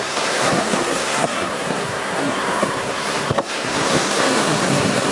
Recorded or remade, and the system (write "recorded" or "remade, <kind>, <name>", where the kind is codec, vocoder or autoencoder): remade, codec, SNAC